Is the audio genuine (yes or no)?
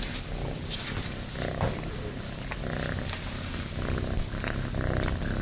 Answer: yes